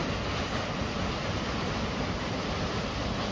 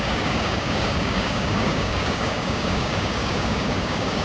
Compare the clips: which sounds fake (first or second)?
second